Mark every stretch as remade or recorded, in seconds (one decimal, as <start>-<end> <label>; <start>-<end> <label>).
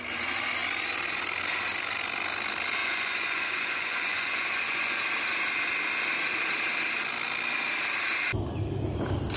0.0-2.8 recorded; 2.8-5.0 remade; 5.0-9.4 recorded